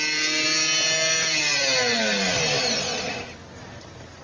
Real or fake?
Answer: real